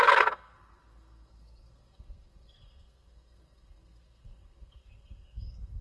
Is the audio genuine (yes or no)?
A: no